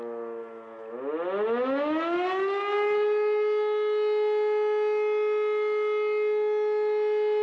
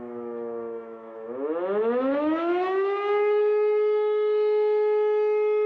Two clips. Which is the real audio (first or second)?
first